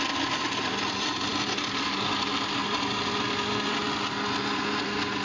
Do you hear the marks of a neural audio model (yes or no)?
no